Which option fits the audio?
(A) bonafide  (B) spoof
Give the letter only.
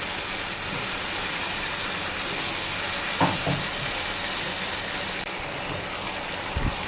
A